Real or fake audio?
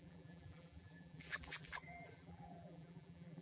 fake